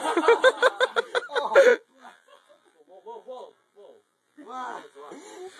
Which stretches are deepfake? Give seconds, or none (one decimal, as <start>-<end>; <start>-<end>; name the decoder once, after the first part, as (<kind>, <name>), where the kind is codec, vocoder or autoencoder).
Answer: 1.7-5.1 (vocoder, BigVGAN v2)